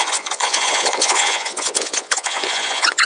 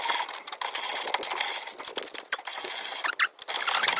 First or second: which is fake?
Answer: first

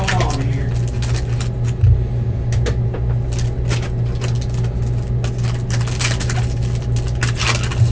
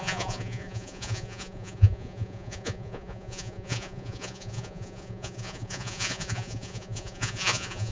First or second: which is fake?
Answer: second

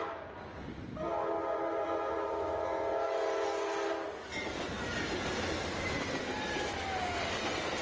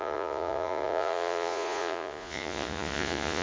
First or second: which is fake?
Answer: second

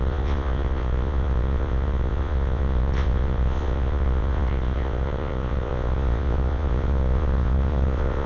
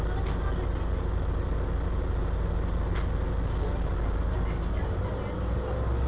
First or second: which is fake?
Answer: first